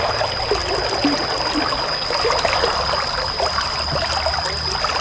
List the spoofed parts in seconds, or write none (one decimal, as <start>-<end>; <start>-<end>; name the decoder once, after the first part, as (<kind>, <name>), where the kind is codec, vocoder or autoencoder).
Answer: none